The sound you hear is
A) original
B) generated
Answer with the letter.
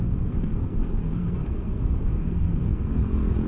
B